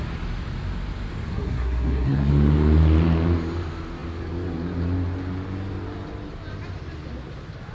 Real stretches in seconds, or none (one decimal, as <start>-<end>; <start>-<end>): 0.0-1.3; 2.3-7.7